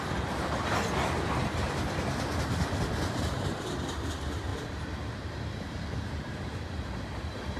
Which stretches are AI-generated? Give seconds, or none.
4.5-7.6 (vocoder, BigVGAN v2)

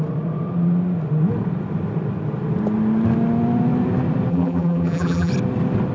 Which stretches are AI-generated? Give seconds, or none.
4.3-5.3 (vocoder, BigVGAN v2)

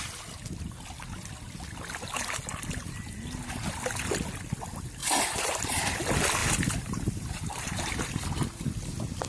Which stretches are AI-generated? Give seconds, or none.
5.0-5.8 (vocoder, BigVGAN v2); 6.4-8.3

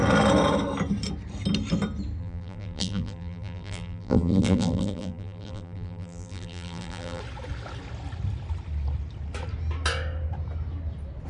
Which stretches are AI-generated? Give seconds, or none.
2.2-7.2 (vocoder, BigVGAN v2)

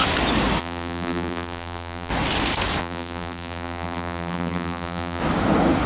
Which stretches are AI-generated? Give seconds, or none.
0.6-2.1 (vocoder, BigVGAN v2); 2.8-5.2

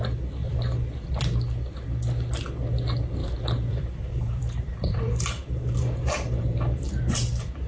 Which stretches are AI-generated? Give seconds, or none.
0.4-1.2 (vocoder, BigVGAN v2); 3.2-6.9

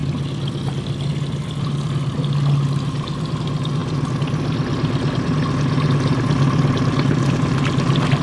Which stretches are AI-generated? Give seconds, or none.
none

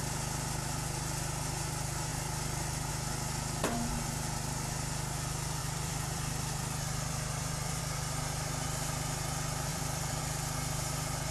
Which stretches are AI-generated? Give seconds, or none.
5.6-7.8 (vocoder, BigVGAN v2); 9.7-10.2